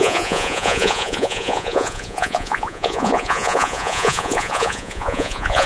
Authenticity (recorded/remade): remade